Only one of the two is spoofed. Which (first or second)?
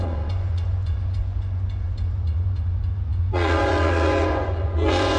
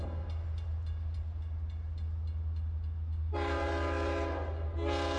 first